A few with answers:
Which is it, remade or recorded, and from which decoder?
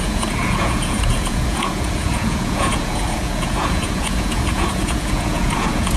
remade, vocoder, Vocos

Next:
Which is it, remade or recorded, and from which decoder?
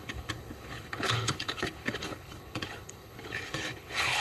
remade, codec, HILCodec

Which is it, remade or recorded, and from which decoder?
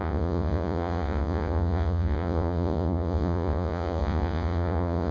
remade, vocoder, Vocos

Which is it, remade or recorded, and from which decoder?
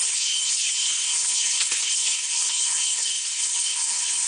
remade, codec, HILCodec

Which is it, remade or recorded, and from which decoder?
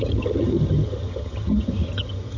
remade, vocoder, HiFi-GAN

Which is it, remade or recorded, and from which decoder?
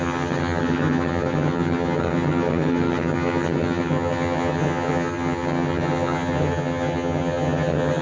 remade, vocoder, HiFi-GAN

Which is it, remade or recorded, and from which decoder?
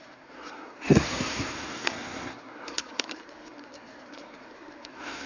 remade, codec, SNAC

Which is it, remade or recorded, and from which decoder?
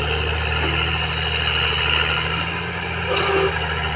recorded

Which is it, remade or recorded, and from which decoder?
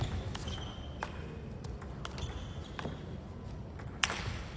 recorded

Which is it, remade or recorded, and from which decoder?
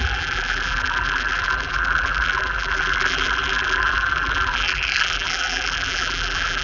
remade, vocoder, BigVGAN v2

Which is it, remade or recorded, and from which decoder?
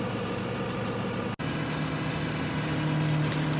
recorded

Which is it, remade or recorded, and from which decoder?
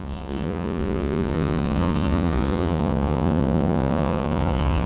remade, vocoder, Vocos